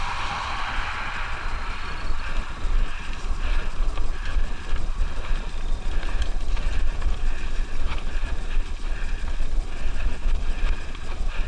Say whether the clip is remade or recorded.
recorded